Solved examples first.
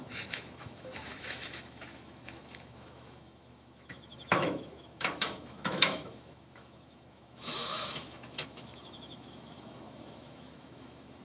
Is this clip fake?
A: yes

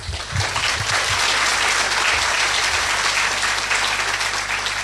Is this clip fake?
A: no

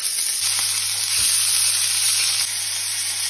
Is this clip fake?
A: no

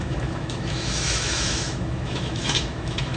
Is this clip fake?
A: yes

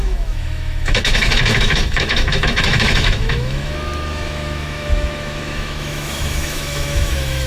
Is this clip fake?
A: yes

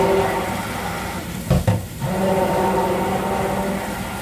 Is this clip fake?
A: no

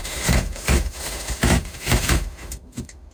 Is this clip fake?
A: yes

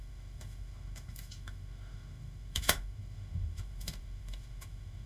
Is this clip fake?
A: yes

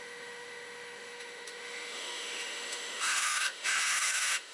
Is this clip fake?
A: yes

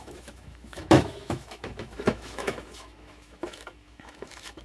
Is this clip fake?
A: yes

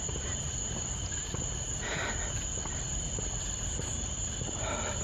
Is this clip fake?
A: no